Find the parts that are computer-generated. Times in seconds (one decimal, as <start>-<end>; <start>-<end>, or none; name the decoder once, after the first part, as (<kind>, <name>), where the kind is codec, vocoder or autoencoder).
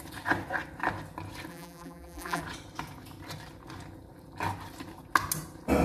1.5-2.4 (vocoder, BigVGAN v2)